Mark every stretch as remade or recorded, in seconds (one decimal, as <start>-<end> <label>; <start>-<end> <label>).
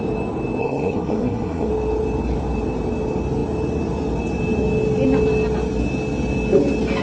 0.0-0.6 recorded; 0.6-1.7 remade; 1.7-7.0 recorded